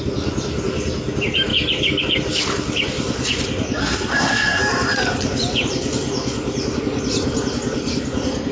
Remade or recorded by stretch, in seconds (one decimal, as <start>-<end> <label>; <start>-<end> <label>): 0.0-3.8 recorded; 3.8-4.6 remade; 4.6-8.5 recorded